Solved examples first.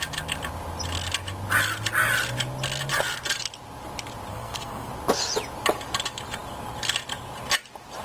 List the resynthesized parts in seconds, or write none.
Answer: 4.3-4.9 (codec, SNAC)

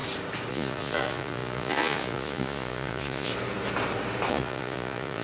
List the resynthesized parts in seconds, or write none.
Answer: 0.5-3.3 (vocoder, Vocos); 4.3-5.2